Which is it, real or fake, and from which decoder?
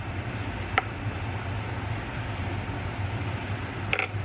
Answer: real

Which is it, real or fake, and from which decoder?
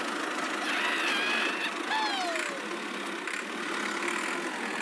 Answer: real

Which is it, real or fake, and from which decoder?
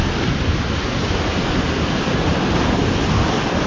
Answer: real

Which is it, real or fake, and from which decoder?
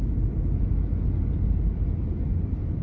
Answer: real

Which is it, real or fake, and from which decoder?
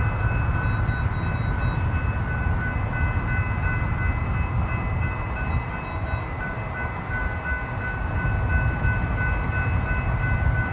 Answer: real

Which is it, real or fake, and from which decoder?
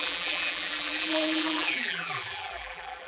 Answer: fake, vocoder, BigVGAN v2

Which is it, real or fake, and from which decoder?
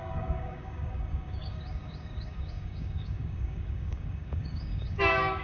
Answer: fake, codec, DAC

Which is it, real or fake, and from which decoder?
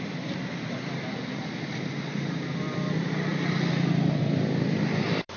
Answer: fake, vocoder, BigVGAN v2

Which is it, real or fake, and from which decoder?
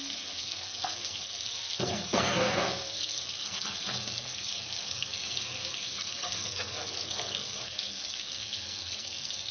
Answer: fake, codec, SNAC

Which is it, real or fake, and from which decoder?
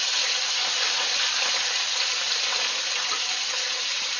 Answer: real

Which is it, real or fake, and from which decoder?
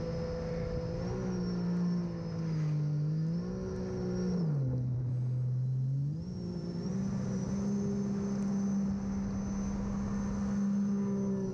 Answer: real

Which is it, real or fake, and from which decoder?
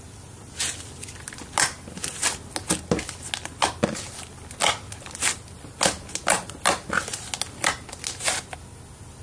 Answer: real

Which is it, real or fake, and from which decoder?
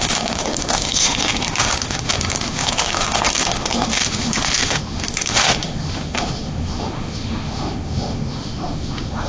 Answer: fake, autoencoder, DAC-VAE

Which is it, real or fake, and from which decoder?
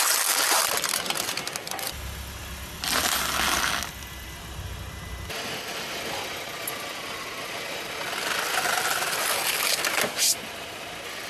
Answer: real